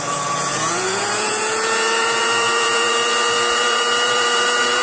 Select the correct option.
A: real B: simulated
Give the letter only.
B